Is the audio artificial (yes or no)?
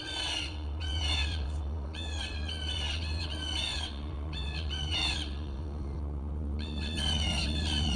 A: yes